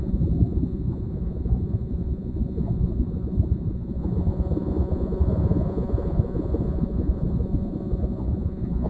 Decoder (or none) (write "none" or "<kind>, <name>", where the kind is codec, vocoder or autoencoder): vocoder, Vocos